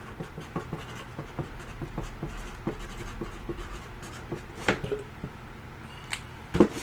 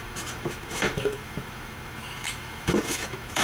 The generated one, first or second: second